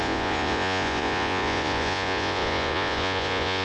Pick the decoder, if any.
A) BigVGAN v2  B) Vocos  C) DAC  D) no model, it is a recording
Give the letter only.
B